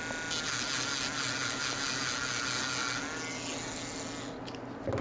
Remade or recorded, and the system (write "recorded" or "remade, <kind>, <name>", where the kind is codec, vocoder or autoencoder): recorded